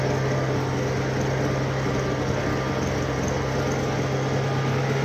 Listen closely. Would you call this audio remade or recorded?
recorded